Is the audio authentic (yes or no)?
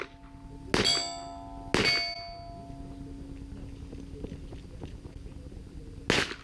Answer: yes